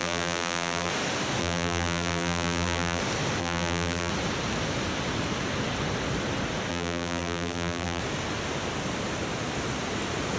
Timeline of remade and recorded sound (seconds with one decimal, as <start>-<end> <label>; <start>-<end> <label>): 0.0-0.9 remade; 0.9-1.4 recorded; 1.4-3.0 remade; 3.0-3.4 recorded; 3.4-4.1 remade; 4.1-6.7 recorded; 6.7-8.0 remade; 8.0-10.4 recorded